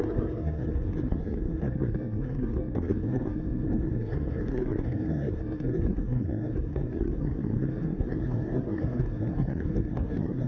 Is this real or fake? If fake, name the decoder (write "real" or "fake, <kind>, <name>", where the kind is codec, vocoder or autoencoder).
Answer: fake, codec, SNAC